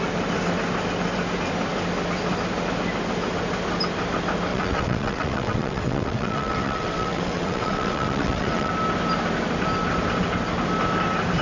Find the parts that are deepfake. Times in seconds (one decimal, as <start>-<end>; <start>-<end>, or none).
4.5-8.7